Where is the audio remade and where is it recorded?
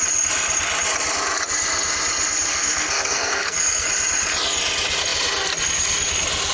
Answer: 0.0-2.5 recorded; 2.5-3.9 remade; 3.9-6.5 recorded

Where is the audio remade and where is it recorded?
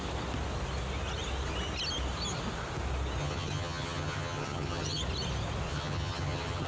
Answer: 0.0-3.2 recorded; 3.2-5.0 remade; 5.0-5.7 recorded; 5.7-6.7 remade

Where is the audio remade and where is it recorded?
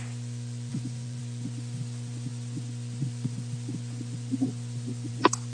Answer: 0.0-0.7 recorded; 0.7-1.2 remade; 1.2-5.5 recorded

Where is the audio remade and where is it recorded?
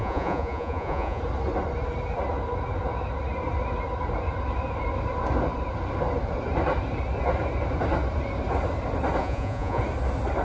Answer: 0.0-1.2 remade; 1.2-9.2 recorded; 9.2-9.8 remade; 9.8-10.4 recorded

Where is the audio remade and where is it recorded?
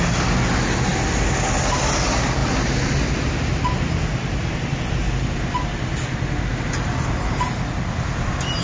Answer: 0.0-8.6 recorded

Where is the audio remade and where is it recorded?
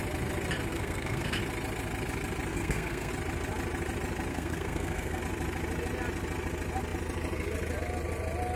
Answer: 0.0-0.7 recorded; 0.7-1.4 remade; 1.4-2.5 recorded; 2.5-3.1 remade; 3.1-4.3 recorded; 4.3-5.2 remade; 5.2-8.6 recorded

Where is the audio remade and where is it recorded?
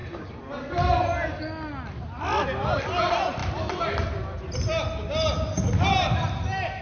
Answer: 0.0-6.8 recorded